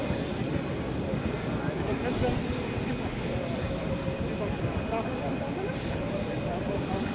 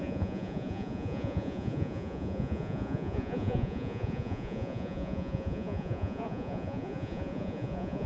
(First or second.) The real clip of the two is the first